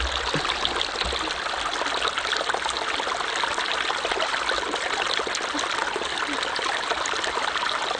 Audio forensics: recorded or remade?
recorded